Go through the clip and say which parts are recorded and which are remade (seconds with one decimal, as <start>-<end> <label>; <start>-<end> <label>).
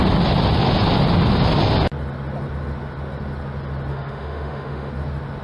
0.0-3.9 recorded; 3.9-4.9 remade; 4.9-5.4 recorded